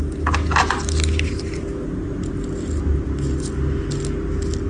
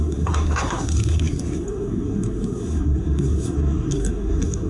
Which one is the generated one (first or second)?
second